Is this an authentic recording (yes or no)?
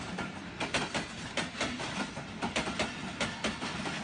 yes